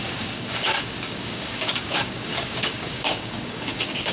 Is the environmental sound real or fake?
fake